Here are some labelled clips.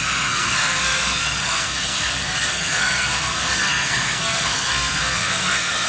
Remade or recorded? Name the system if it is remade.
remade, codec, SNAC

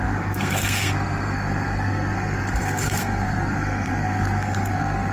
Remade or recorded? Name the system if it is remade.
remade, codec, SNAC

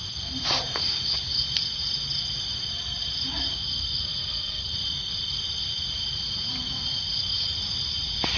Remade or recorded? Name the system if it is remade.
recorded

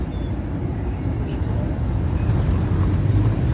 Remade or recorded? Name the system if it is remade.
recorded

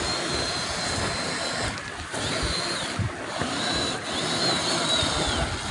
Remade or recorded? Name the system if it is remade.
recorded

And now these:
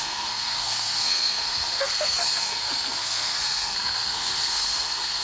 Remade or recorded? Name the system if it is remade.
remade, codec, SNAC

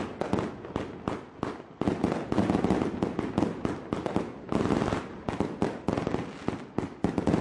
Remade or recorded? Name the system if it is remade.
recorded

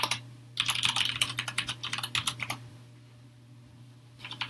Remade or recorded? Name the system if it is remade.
recorded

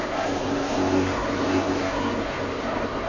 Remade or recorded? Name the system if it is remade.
remade, codec, SNAC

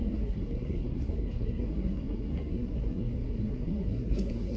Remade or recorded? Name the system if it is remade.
remade, codec, SNAC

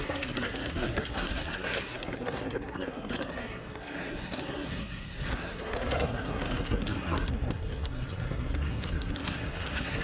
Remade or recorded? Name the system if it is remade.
remade, codec, SNAC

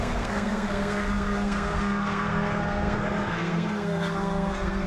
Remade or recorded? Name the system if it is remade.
remade, codec, SNAC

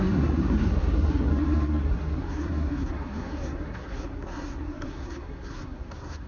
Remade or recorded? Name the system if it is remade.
remade, codec, SNAC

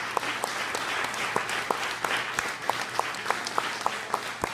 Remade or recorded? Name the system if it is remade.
recorded